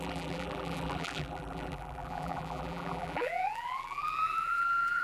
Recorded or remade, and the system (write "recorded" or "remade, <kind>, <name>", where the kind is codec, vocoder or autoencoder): remade, vocoder, BigVGAN v2